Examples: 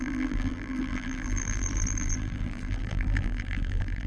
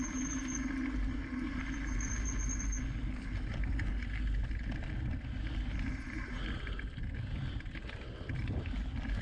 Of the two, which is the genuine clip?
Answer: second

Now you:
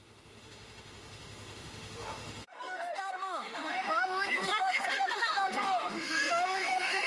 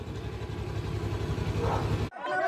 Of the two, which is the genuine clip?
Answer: second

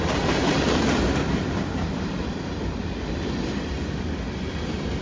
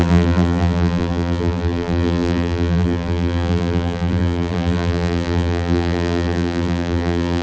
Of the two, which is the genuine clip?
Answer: first